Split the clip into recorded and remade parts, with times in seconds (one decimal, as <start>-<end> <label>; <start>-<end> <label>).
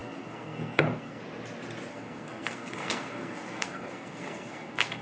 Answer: 0.0-1.2 remade; 1.2-1.9 recorded; 1.9-5.0 remade